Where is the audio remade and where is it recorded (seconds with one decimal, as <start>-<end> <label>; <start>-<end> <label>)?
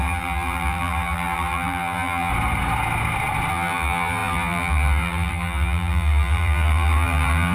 0.0-2.3 remade; 2.3-3.5 recorded; 3.5-7.5 remade